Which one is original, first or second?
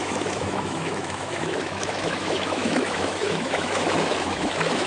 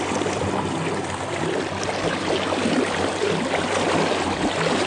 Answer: second